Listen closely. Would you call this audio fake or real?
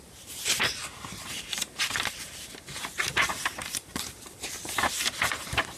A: fake